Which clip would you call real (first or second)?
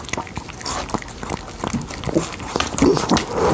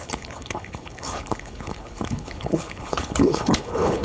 first